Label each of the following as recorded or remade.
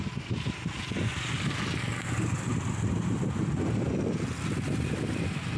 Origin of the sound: remade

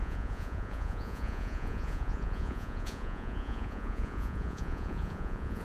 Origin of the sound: remade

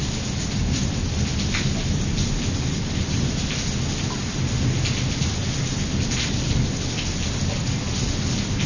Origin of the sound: recorded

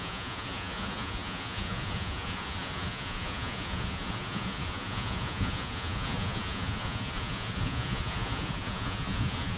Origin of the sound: remade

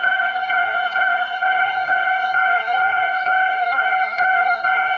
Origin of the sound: remade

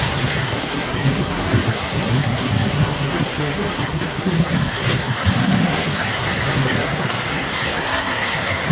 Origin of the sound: remade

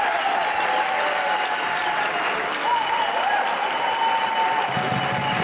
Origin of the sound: recorded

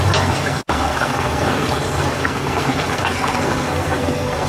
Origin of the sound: remade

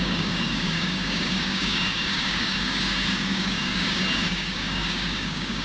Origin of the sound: remade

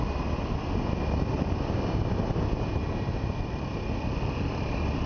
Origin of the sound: recorded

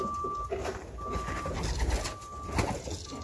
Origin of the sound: recorded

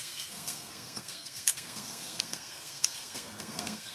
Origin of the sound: remade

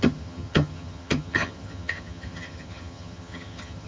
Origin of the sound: remade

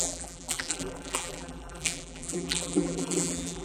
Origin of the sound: remade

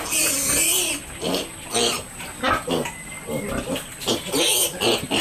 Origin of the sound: recorded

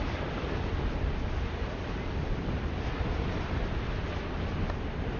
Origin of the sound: recorded